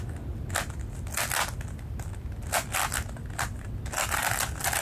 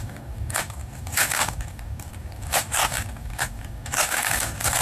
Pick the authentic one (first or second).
first